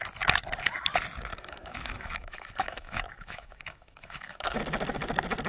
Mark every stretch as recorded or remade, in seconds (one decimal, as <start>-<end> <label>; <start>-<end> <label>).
0.0-1.3 recorded; 1.3-4.6 remade; 4.6-5.5 recorded